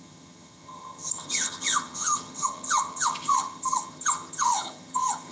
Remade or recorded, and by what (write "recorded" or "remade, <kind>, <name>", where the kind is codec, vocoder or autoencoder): remade, vocoder, HiFi-GAN